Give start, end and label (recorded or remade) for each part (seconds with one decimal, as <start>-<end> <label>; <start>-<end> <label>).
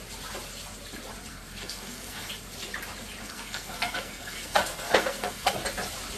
0.0-1.3 recorded; 1.3-2.3 remade; 2.3-3.2 recorded; 3.2-5.5 remade; 5.5-6.2 recorded